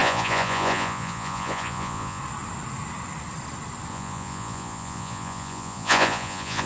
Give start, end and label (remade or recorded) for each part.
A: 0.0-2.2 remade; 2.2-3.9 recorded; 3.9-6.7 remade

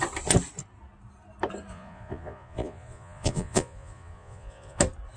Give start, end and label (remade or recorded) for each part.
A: 0.0-1.7 recorded; 1.7-4.8 remade; 4.8-5.2 recorded

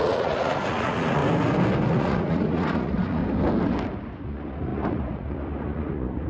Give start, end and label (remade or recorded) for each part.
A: 0.0-1.2 remade; 1.2-1.9 recorded; 1.9-3.2 remade; 3.2-4.2 recorded; 4.2-6.3 remade

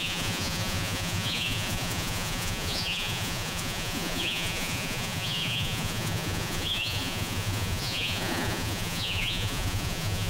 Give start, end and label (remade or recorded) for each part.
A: 0.0-10.3 remade

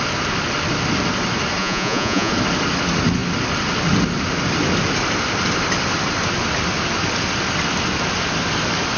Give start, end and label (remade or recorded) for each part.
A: 0.0-1.6 recorded; 1.6-2.3 remade; 2.3-9.0 recorded

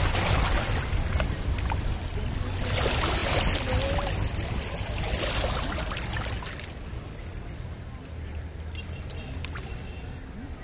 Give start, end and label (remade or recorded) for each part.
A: 0.0-10.6 recorded